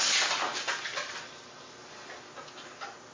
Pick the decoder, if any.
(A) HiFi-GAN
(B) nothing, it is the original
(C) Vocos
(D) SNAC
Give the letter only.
B